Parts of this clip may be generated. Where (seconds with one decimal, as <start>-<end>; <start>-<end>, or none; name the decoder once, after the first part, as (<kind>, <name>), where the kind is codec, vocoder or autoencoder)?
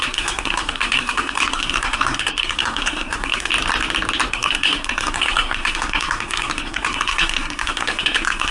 0.0-3.5 (codec, SNAC); 4.3-8.5